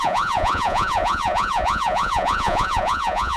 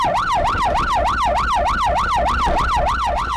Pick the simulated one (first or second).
first